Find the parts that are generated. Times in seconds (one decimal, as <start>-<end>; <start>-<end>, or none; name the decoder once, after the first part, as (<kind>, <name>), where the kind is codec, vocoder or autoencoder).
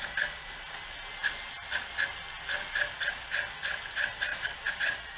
none